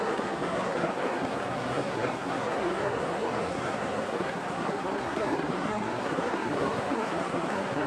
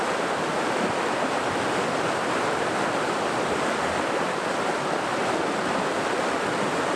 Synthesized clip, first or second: first